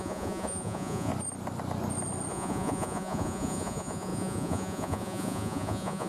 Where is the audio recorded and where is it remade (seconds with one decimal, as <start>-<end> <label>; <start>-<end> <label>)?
0.0-1.1 remade; 1.1-2.3 recorded; 2.3-6.1 remade